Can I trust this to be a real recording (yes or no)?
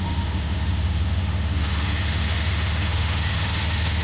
no